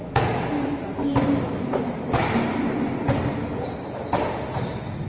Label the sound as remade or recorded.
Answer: recorded